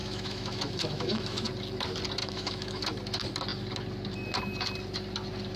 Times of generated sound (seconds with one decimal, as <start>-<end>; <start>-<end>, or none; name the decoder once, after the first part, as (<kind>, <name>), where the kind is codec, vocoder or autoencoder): 0.0-1.5 (autoencoder, DAC-VAE); 2.2-2.8